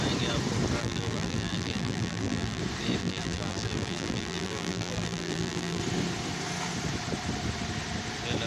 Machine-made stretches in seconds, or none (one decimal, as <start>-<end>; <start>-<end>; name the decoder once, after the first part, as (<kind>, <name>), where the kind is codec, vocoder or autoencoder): 0.8-2.6 (vocoder, BigVGAN v2); 3.0-5.8